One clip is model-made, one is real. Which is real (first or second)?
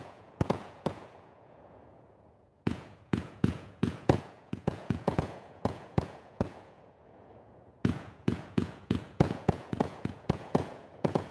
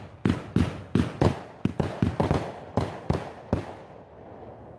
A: second